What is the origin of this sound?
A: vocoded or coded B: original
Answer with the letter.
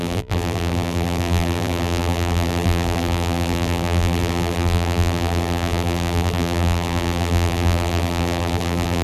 A